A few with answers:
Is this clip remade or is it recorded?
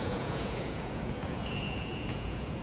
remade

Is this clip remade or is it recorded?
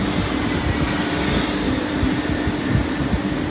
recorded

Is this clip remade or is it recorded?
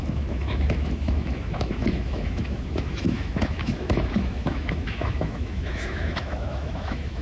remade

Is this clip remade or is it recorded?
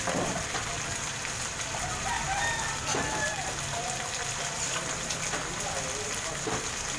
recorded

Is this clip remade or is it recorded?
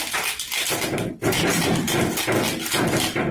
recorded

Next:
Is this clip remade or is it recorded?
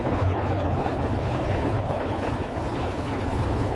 remade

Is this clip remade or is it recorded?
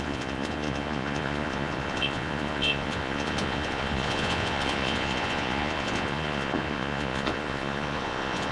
remade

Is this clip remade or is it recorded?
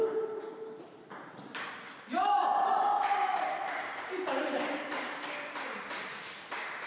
recorded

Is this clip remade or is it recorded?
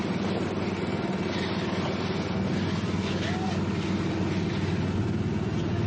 recorded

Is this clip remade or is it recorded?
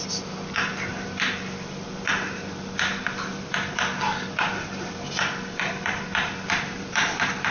recorded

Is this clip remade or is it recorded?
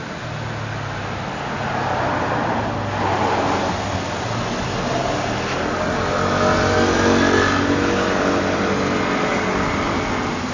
recorded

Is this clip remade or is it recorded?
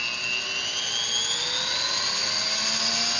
recorded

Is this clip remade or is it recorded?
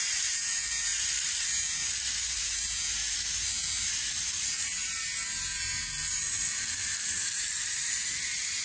remade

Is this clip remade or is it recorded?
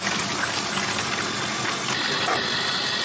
recorded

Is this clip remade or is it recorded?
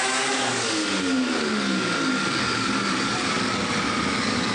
remade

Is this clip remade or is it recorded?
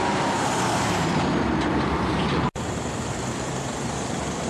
remade